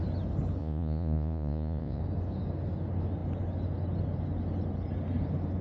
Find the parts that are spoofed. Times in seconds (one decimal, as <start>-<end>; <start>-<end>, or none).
0.6-2.0